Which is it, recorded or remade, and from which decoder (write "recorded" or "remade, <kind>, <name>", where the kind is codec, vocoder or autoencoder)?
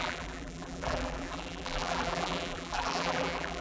remade, vocoder, BigVGAN v2